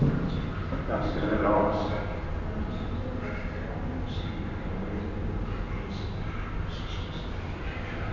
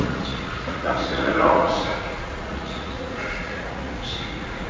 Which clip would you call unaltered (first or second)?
first